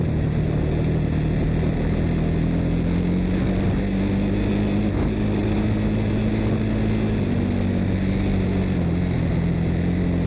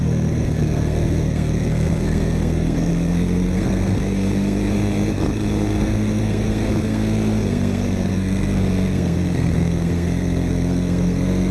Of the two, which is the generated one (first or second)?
second